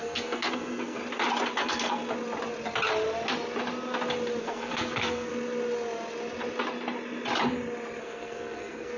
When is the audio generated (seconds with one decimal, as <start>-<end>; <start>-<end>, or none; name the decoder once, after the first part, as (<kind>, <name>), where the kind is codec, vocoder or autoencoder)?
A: 0.0-1.0 (codec, SNAC); 1.6-2.0; 4.4-5.3; 8.0-9.0